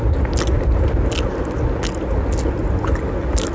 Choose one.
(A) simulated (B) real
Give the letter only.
B